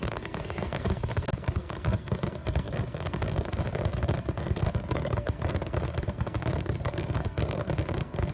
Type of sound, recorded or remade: remade